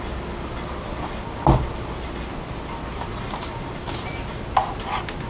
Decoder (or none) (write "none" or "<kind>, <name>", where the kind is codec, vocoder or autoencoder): none